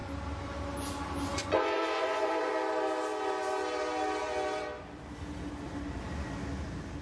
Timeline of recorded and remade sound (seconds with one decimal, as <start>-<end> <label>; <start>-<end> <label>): 0.0-1.4 recorded; 1.4-2.5 remade; 2.5-7.0 recorded